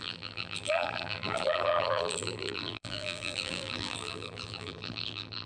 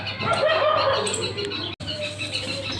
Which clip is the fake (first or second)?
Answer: first